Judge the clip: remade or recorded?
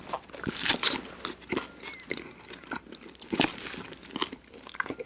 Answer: recorded